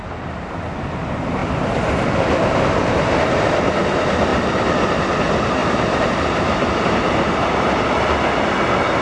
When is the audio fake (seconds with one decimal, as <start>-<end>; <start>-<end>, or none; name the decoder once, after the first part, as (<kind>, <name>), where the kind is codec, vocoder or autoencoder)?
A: 5.6-7.9 (vocoder, BigVGAN v2)